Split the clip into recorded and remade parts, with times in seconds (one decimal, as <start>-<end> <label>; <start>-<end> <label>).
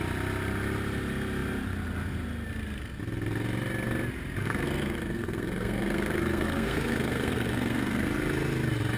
0.0-4.4 recorded; 4.4-8.1 remade; 8.1-9.0 recorded